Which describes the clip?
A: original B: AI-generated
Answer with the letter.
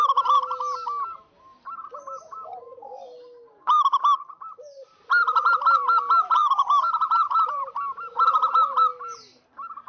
A